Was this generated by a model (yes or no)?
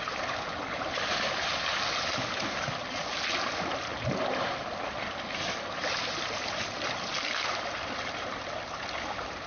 no